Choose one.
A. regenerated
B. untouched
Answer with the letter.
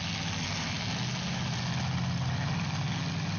B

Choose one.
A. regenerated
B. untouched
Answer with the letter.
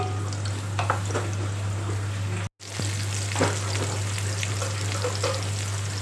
B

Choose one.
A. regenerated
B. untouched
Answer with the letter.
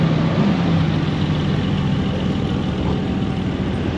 B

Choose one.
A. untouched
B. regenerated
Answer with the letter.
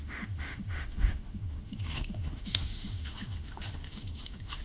B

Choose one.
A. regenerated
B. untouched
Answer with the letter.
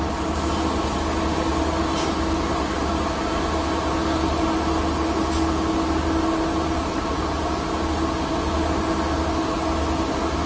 B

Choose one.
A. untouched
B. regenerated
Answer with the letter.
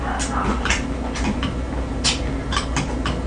A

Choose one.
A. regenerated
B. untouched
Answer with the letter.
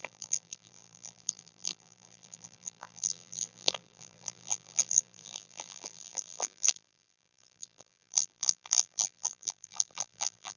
A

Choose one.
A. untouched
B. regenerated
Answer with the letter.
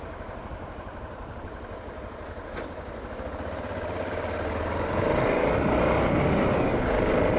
A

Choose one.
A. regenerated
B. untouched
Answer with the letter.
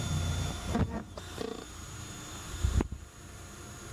A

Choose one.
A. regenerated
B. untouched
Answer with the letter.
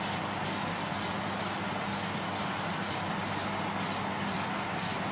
B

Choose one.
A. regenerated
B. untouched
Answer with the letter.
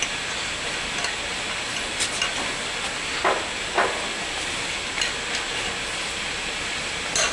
B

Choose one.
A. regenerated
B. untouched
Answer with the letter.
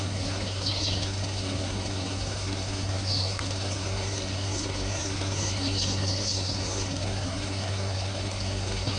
A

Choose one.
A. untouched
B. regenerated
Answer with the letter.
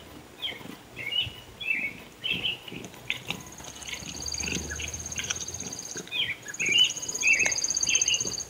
B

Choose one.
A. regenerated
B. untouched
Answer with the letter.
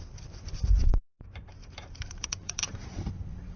A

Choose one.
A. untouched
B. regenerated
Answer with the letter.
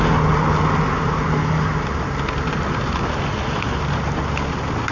A